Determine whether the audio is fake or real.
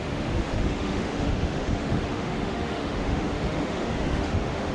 fake